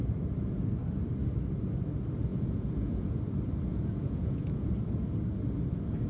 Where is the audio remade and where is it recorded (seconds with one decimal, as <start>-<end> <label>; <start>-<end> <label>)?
0.0-2.3 recorded; 2.3-3.2 remade; 3.2-3.7 recorded; 3.7-4.7 remade; 4.7-6.1 recorded